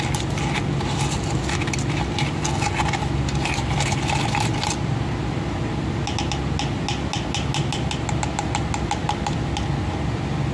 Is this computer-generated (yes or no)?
no